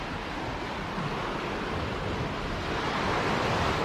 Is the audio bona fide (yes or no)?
no